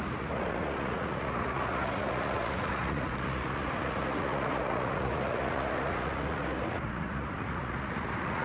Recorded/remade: remade